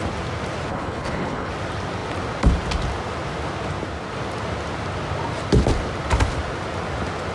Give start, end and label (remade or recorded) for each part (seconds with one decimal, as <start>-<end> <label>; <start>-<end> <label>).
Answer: 0.0-0.7 recorded; 0.7-1.5 remade; 1.5-7.3 recorded